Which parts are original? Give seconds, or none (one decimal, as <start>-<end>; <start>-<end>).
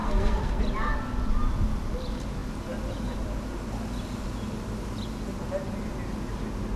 0.6-6.8